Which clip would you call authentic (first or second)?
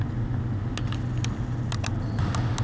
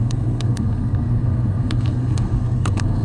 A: first